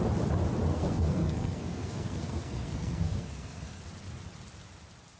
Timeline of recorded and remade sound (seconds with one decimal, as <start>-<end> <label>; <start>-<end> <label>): 0.0-0.7 recorded; 0.7-3.8 remade; 3.8-5.2 recorded